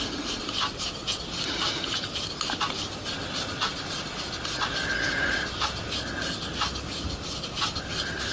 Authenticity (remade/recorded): recorded